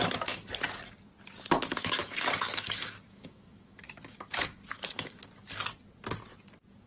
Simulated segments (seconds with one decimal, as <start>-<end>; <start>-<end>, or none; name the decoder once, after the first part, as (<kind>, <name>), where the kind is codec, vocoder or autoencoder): 1.7-5.2 (autoencoder, DAC-VAE)